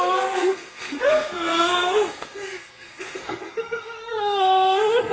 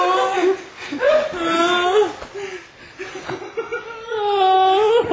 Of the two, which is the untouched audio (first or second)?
second